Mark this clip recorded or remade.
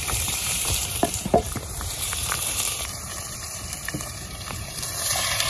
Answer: remade